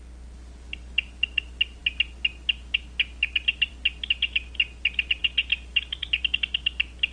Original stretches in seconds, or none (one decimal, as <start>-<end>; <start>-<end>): 0.0-7.1

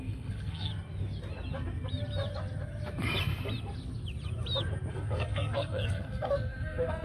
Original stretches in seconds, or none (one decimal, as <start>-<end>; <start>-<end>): 0.7-4.9

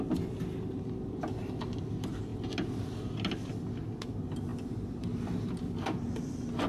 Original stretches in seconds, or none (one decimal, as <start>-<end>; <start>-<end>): 0.0-6.7

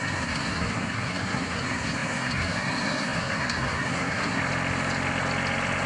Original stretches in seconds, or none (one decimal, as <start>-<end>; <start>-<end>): 4.4-5.9